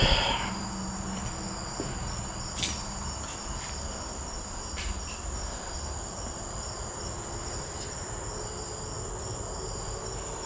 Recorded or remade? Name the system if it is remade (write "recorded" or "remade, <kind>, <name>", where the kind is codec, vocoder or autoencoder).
recorded